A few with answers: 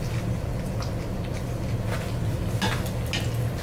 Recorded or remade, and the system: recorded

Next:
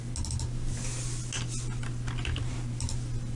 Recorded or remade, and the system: recorded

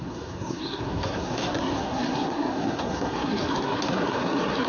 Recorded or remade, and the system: remade, codec, SNAC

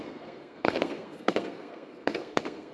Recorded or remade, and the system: remade, codec, SNAC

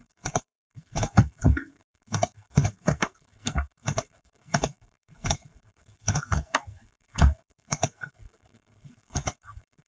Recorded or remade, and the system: remade, codec, SNAC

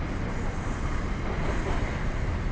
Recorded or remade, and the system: recorded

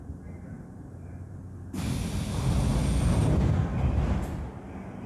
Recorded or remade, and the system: recorded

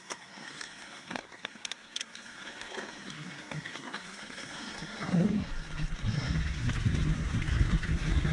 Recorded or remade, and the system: remade, codec, SNAC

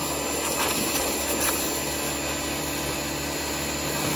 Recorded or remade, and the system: recorded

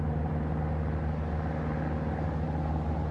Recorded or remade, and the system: recorded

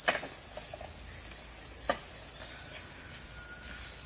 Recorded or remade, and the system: recorded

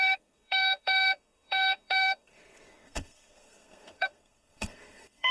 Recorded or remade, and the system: remade, codec, SNAC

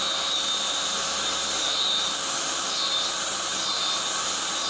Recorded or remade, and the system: recorded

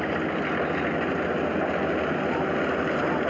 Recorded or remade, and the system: recorded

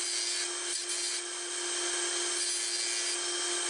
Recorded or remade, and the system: recorded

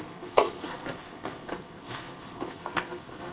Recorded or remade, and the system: remade, codec, SNAC